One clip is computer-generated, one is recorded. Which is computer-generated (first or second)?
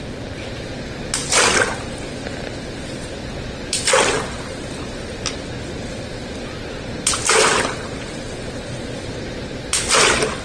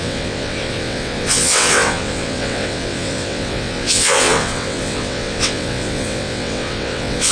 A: second